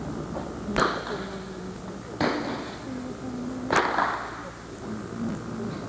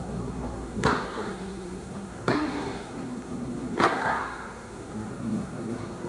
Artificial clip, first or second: second